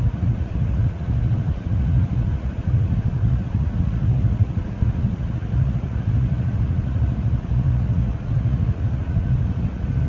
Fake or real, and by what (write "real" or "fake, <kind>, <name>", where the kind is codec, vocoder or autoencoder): fake, vocoder, Vocos